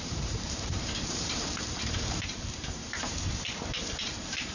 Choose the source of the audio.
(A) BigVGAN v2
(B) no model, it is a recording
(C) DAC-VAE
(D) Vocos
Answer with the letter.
A